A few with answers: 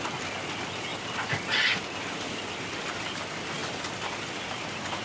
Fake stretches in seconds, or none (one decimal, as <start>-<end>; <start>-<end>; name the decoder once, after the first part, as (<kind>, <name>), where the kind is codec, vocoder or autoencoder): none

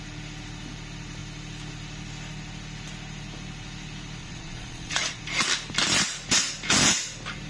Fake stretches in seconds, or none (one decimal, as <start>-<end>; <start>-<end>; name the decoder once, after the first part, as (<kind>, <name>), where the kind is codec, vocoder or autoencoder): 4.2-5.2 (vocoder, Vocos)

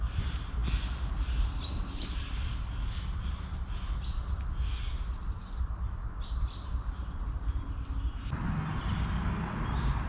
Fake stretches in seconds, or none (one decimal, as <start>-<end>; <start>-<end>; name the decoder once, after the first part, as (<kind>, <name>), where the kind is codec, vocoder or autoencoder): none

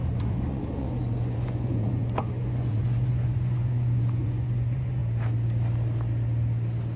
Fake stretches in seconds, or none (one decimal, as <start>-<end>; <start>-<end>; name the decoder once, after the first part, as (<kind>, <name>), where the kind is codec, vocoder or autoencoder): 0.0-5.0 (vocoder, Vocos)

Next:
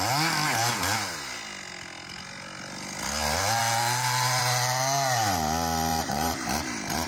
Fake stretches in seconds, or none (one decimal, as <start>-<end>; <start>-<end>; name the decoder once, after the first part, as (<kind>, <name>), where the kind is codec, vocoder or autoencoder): 5.9-7.1 (vocoder, BigVGAN v2)

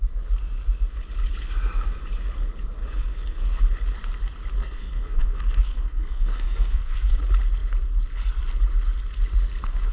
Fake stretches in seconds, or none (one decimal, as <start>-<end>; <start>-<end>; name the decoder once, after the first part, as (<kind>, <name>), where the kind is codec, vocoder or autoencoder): 2.8-3.6 (codec, SNAC); 4.6-7.1

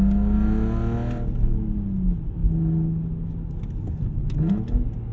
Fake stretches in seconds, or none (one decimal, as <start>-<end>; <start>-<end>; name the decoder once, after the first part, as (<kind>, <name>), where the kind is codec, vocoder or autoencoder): none

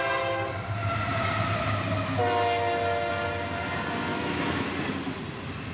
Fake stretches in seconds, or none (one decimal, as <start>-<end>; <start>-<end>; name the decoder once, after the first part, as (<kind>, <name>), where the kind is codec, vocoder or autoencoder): 4.1-4.7 (autoencoder, DAC-VAE)